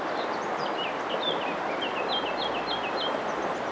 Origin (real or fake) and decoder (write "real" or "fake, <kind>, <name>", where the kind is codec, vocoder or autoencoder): real